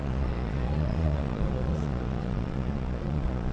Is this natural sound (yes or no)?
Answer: no